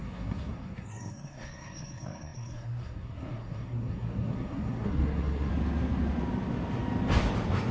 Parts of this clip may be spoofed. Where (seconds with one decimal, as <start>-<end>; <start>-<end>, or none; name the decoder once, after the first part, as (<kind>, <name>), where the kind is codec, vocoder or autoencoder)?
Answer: 0.0-5.5 (codec, SNAC)